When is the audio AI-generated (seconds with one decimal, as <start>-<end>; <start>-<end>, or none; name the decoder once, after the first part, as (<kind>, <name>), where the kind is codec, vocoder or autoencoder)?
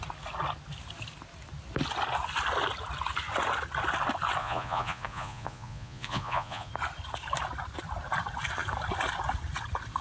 4.4-6.7 (vocoder, Vocos)